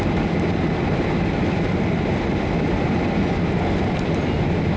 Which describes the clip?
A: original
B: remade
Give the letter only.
A